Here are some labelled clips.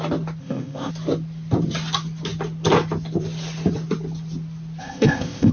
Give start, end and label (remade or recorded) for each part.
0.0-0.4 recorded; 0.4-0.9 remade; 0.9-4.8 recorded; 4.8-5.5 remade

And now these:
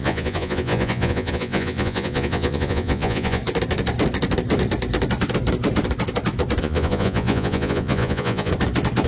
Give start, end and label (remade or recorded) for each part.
0.0-3.4 remade; 3.4-6.6 recorded; 6.6-8.5 remade; 8.5-9.1 recorded

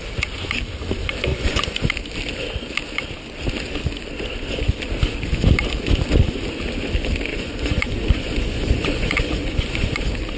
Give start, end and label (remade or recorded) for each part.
0.0-1.3 recorded; 1.3-1.9 remade; 1.9-7.3 recorded; 7.3-10.0 remade; 10.0-10.4 recorded

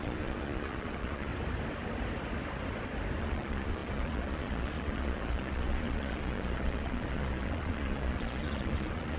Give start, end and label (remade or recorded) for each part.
0.0-1.3 remade; 1.3-3.2 recorded; 3.2-9.2 remade

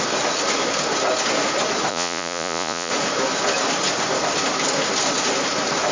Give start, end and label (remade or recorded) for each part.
0.0-1.9 recorded; 1.9-2.9 remade; 2.9-5.9 recorded

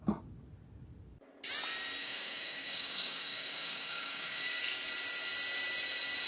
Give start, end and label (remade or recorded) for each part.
0.0-2.0 recorded; 2.0-4.6 remade; 4.6-6.3 recorded

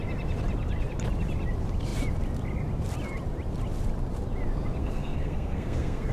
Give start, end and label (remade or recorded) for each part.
0.0-4.8 recorded; 4.8-6.1 remade